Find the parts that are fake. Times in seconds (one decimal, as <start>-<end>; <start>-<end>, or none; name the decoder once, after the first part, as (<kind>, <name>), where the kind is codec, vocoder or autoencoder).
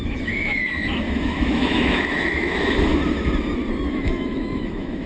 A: 0.0-2.9 (autoencoder, DAC-VAE); 3.9-5.1